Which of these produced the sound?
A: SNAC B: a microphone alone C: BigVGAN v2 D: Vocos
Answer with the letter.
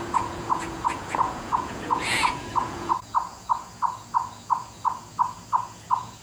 D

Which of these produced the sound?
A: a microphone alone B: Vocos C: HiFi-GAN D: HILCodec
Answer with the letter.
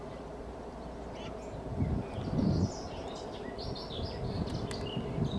A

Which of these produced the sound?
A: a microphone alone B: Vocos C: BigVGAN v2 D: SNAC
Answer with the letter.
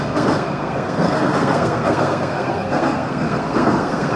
D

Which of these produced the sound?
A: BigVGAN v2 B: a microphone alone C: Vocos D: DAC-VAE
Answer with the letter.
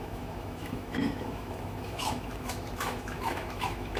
D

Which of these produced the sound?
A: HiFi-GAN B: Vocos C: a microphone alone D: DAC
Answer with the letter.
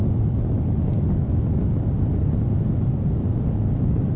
C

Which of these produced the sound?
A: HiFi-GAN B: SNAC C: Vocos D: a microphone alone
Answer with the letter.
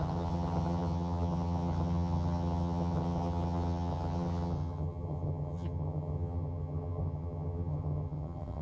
A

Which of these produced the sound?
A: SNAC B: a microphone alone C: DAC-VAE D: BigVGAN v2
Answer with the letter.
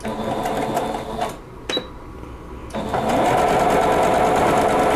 B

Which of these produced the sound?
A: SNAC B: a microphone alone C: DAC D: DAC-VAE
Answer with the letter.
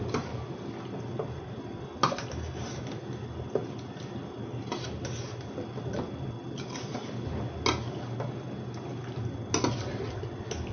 B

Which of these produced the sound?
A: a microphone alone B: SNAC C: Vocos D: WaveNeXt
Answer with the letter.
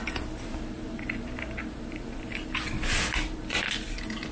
A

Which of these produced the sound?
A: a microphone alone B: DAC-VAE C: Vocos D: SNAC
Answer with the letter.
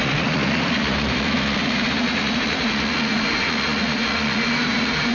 C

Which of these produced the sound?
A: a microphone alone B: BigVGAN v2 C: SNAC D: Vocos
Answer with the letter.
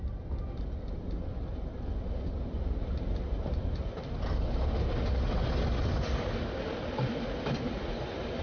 A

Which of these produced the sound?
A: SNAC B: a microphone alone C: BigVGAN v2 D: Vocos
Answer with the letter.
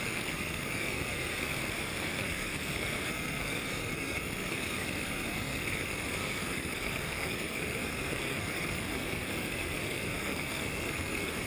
A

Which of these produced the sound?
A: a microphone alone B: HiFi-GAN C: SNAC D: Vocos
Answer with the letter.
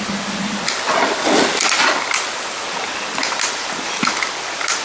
A